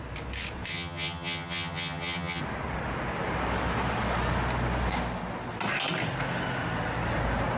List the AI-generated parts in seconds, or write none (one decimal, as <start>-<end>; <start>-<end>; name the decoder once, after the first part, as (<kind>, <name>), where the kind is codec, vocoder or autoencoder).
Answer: 0.7-2.4 (vocoder, HiFi-GAN)